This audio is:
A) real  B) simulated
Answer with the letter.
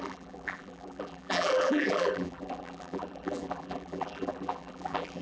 B